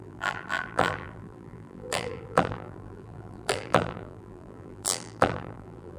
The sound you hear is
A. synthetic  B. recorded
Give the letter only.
A